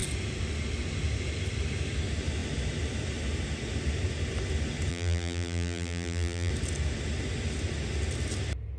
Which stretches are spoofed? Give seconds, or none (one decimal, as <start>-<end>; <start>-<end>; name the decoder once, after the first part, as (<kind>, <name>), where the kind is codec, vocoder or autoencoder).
4.9-6.5 (vocoder, BigVGAN v2)